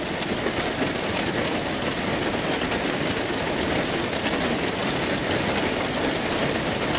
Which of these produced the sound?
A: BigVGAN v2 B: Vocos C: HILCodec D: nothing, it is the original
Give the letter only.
D